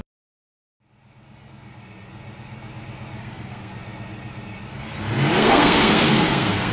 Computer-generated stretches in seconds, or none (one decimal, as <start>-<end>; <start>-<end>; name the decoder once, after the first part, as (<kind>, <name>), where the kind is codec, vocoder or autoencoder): 3.2-3.7 (codec, SNAC); 5.4-6.7